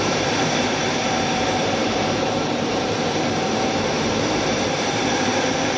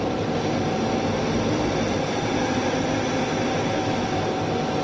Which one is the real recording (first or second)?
second